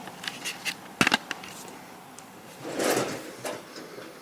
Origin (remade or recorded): recorded